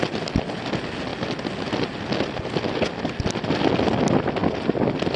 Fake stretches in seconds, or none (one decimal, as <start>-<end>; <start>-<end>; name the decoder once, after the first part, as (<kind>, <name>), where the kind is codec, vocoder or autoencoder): none